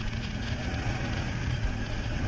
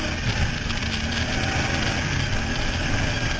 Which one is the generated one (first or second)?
first